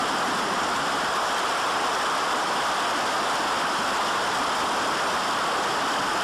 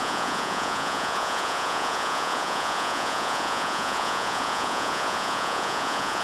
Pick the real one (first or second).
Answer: first